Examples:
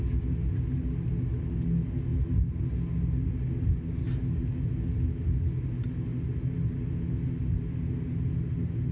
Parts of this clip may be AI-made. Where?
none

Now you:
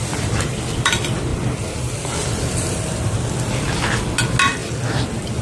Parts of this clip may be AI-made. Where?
none

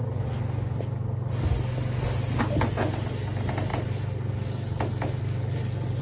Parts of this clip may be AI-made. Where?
none

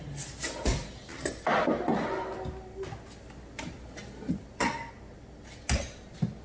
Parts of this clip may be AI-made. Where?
none

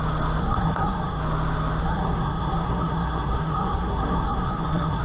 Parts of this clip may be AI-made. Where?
0.4-1.2; 1.8-5.0

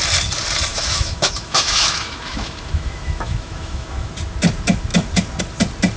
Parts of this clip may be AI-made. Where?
0.7-4.1

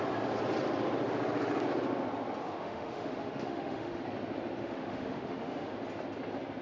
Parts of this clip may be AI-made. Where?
2.4-4.0; 4.6-5.7

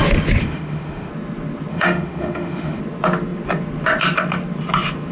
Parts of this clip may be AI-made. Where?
0.4-1.1; 1.7-2.8